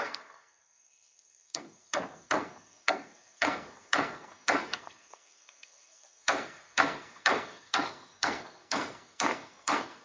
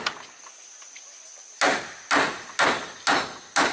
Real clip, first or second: second